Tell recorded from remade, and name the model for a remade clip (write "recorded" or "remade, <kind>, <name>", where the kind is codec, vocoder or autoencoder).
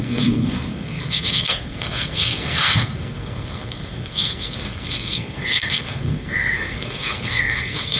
remade, codec, SNAC